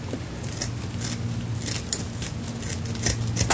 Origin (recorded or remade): recorded